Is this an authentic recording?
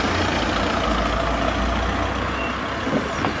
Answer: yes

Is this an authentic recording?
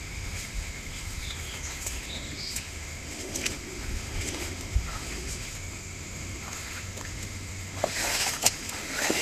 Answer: no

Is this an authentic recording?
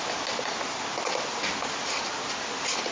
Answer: yes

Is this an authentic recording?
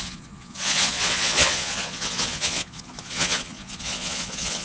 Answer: no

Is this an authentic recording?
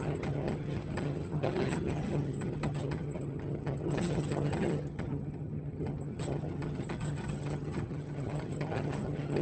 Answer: no